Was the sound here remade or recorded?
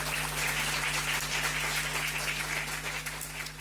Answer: recorded